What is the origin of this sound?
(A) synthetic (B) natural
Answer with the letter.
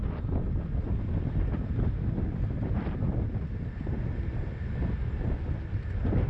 B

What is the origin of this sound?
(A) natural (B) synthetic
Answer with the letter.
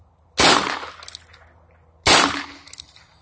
A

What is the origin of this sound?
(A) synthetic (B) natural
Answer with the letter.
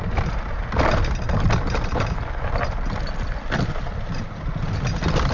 B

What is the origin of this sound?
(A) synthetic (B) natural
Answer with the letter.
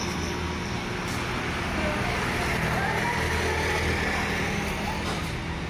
B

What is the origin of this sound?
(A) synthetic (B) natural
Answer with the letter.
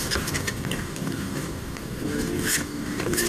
A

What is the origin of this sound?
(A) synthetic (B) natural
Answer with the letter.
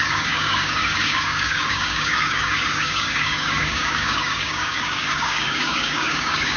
A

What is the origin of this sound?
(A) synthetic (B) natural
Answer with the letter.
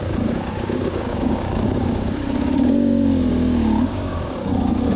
A